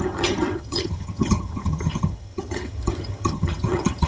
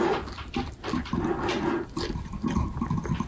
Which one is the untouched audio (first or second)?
second